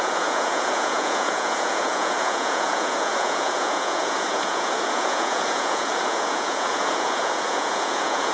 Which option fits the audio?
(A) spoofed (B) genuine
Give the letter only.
A